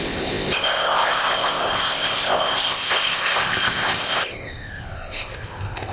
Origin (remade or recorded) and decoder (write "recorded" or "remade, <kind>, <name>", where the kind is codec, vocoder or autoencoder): remade, codec, ZipCodec